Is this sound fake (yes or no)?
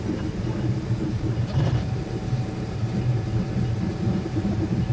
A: yes